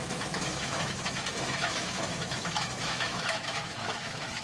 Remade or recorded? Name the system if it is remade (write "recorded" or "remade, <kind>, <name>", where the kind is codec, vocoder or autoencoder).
remade, autoencoder, DAC-VAE